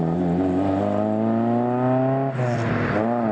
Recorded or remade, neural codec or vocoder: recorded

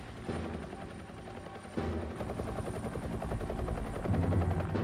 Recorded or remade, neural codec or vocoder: recorded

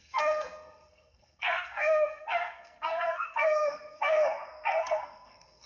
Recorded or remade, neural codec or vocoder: remade, codec, SNAC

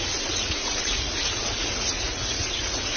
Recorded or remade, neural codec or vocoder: remade, vocoder, Vocos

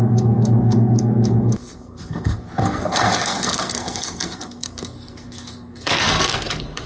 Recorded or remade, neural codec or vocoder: remade, codec, SNAC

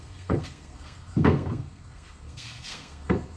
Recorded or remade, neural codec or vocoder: remade, codec, SNAC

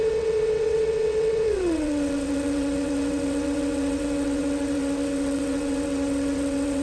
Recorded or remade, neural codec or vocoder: remade, vocoder, WaveNeXt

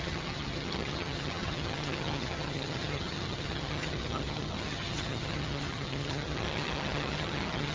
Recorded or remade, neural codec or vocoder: remade, vocoder, HiFi-GAN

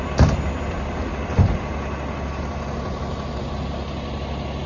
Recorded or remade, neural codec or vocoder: recorded